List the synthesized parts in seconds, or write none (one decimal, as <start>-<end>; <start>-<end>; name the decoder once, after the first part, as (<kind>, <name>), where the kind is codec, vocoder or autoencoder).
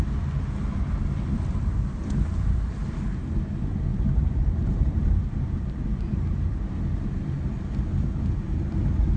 3.9-6.9 (vocoder, BigVGAN v2)